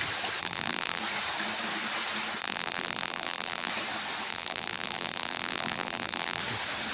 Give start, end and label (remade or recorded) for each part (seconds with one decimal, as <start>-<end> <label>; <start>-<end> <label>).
0.0-0.4 recorded; 0.4-1.0 remade; 1.0-2.4 recorded; 2.4-3.7 remade; 3.7-4.3 recorded; 4.3-6.4 remade; 6.4-6.9 recorded